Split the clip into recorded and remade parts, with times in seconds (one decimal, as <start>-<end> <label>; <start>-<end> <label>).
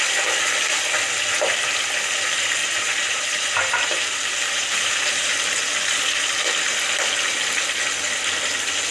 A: 0.0-2.6 recorded; 2.6-5.6 remade; 5.6-8.9 recorded